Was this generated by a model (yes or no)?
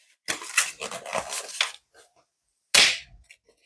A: no